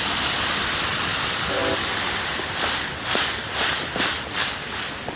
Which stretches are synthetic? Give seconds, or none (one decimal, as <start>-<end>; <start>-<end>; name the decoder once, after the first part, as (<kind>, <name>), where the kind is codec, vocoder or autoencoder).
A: 1.1-4.1 (vocoder, BigVGAN v2)

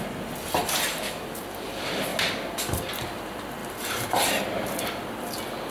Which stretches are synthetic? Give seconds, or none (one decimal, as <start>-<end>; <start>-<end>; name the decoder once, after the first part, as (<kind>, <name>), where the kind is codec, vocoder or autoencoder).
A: 0.6-1.2 (vocoder, BigVGAN v2); 3.6-4.3

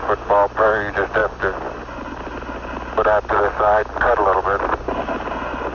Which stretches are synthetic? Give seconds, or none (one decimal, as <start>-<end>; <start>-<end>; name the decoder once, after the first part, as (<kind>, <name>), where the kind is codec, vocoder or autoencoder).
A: none

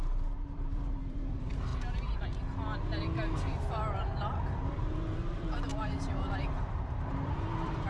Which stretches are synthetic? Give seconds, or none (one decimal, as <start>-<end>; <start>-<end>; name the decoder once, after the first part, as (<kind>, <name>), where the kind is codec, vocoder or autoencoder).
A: 0.0-1.7 (vocoder, BigVGAN v2); 4.7-7.9

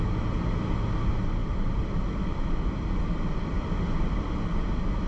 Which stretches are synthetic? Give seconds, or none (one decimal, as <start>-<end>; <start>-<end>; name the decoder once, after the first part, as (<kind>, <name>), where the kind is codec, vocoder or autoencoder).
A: 1.4-4.4 (vocoder, BigVGAN v2)